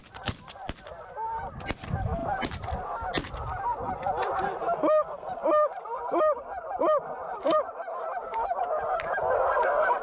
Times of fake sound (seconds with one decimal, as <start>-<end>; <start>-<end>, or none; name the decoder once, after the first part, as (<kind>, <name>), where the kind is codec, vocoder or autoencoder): 2.2-2.7 (vocoder, BigVGAN v2); 5.4-8.6